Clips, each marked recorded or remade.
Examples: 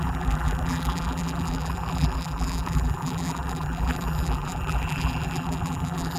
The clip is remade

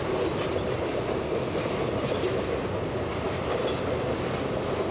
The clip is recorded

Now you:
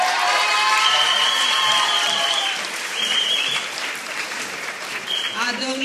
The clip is remade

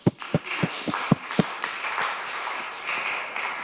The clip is recorded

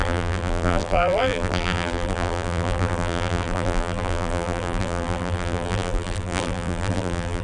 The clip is remade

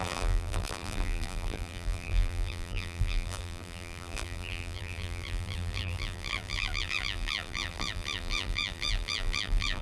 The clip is remade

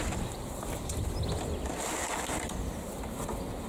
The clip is recorded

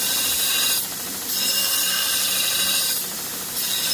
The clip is remade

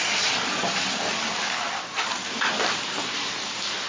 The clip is recorded